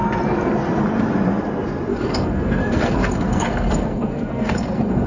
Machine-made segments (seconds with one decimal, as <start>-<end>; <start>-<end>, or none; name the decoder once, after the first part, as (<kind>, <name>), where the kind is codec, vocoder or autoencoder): 1.9-5.1 (codec, SNAC)